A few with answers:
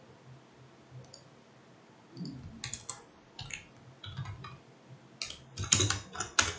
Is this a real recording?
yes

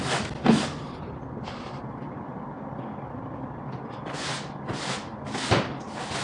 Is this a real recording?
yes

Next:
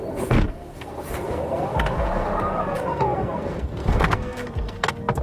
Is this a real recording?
no